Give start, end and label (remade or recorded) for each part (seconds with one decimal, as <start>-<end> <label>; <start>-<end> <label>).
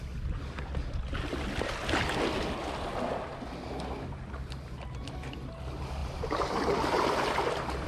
0.0-6.0 recorded; 6.0-6.8 remade; 6.8-7.9 recorded